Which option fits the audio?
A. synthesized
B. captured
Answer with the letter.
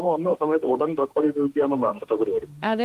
A